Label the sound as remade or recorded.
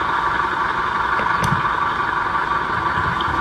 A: recorded